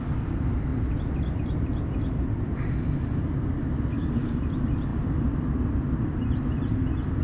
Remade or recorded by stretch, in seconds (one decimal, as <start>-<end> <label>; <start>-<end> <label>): 0.0-3.9 recorded; 3.9-4.4 remade; 4.4-7.2 recorded